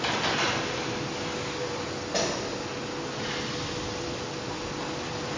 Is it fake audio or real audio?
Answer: real